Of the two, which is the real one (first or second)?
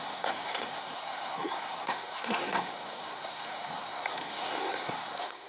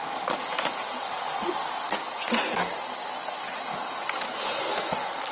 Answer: second